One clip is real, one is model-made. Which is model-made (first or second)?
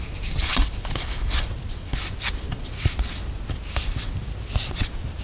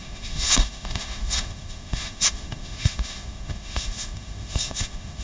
second